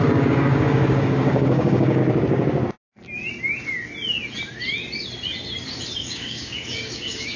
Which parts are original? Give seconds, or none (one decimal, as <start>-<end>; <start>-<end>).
2.0-6.0